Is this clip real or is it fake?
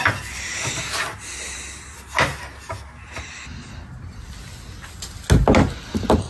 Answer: real